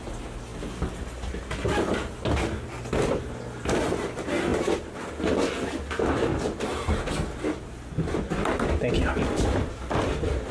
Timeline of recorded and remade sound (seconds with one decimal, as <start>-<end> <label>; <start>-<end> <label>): 0.0-10.5 recorded